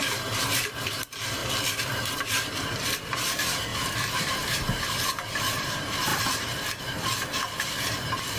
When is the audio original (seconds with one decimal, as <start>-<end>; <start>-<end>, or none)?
1.4-2.1